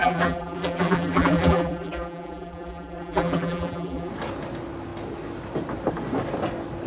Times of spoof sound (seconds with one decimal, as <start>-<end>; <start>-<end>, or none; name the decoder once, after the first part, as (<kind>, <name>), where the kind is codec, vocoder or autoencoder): 0.0-4.1 (vocoder, BigVGAN v2)